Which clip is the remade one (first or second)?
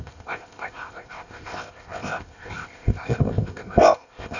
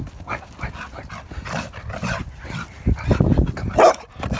first